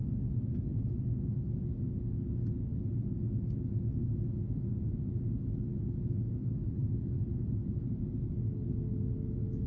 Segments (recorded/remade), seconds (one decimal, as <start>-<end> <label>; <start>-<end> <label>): 0.0-6.8 recorded; 6.8-7.8 remade; 7.8-9.7 recorded